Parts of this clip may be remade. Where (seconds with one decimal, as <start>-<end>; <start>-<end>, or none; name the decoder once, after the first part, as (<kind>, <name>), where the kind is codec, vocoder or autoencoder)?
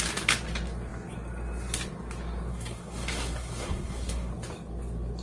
2.5-4.3 (codec, SNAC)